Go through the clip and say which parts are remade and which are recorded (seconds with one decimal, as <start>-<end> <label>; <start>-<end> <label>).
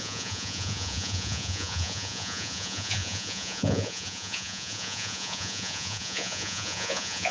0.0-7.3 remade